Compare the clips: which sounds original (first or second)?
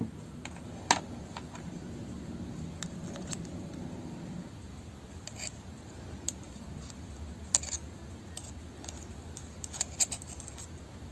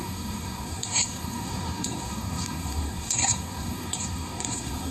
first